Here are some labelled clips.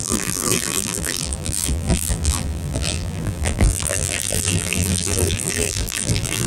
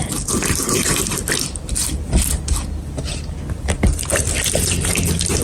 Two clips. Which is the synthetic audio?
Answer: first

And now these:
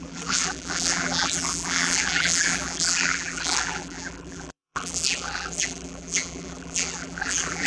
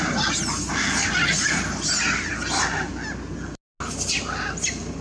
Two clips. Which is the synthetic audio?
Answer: first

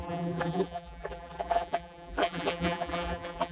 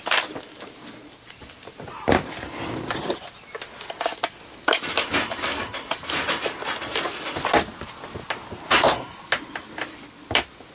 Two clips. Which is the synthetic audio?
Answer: first